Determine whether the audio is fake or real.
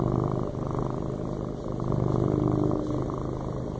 real